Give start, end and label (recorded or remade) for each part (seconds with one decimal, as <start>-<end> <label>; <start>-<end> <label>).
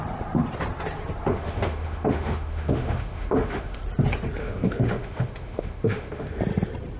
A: 0.0-1.3 recorded; 1.3-3.8 remade; 3.8-4.4 recorded; 4.4-6.4 remade; 6.4-7.0 recorded